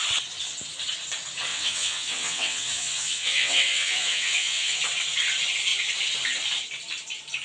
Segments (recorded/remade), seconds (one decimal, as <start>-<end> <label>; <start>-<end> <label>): 0.0-1.5 recorded; 1.5-4.8 remade; 4.8-7.4 recorded